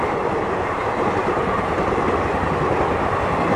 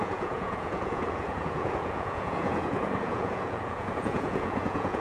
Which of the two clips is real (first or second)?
first